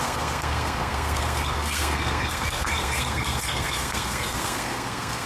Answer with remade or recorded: remade